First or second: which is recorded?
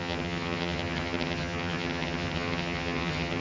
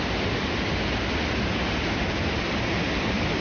second